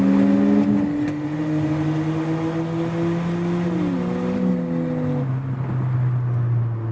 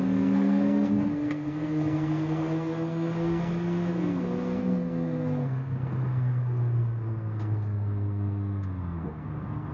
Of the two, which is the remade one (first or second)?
second